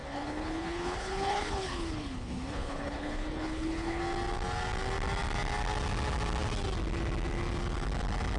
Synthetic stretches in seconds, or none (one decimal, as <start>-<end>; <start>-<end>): 0.0-4.0